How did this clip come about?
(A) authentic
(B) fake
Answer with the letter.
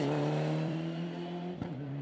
B